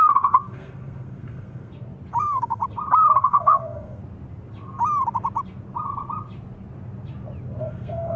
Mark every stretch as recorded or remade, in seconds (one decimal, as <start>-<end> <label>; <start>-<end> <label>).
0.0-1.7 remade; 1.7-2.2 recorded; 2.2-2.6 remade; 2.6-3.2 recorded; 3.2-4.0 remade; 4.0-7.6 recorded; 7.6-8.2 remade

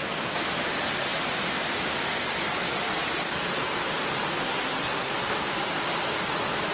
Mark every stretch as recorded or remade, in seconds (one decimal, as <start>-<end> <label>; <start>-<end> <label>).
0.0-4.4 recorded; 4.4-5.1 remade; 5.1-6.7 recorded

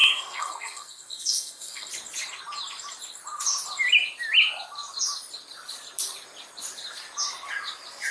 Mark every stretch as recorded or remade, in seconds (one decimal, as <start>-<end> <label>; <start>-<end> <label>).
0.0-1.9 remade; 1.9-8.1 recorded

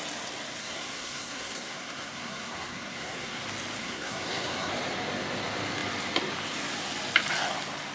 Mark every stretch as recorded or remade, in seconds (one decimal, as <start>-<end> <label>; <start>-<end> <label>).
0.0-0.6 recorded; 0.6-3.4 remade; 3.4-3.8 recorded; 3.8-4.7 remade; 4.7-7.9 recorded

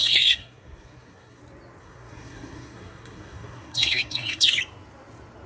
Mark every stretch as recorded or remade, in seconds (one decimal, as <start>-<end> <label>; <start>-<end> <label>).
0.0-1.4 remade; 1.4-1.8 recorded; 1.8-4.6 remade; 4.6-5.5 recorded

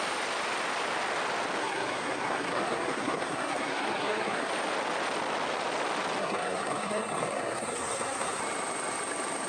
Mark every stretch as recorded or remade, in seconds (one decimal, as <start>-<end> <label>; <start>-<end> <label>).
0.0-1.6 recorded; 1.6-4.5 remade; 4.5-6.2 recorded; 6.2-8.4 remade; 8.4-9.5 recorded